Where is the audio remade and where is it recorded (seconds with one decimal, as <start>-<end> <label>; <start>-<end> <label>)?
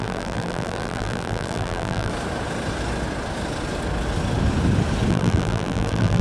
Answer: 0.0-2.1 remade; 2.1-5.1 recorded; 5.1-6.2 remade